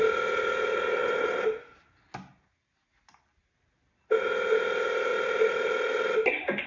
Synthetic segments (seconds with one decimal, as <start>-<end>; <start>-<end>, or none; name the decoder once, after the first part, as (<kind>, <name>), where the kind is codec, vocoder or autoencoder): 5.1-6.3 (vocoder, BigVGAN v2)